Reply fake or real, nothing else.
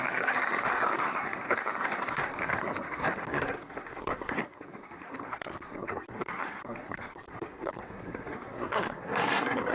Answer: fake